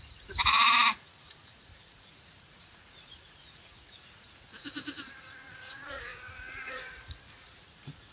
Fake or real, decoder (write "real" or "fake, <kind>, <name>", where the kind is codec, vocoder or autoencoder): fake, vocoder, Vocos